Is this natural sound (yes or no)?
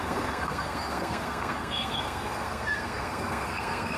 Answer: no